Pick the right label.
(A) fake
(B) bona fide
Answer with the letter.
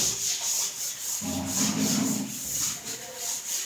B